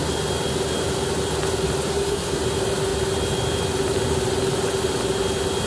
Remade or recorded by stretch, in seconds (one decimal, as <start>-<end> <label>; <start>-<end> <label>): 0.0-1.9 recorded; 1.9-2.4 remade; 2.4-5.7 recorded